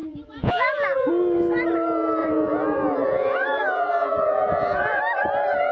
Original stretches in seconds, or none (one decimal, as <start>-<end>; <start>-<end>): 1.1-2.2; 5.0-5.7